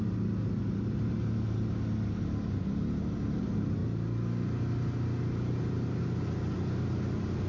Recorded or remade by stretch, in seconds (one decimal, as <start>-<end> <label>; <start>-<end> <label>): 0.0-7.5 recorded